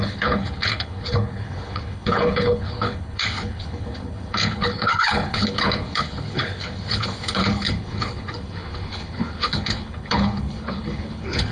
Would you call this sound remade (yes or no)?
yes